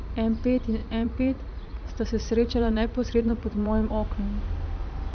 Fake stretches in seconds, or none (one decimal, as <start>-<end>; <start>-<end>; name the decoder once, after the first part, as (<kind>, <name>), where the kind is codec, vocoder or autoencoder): 0.8-3.9 (vocoder, Vocos)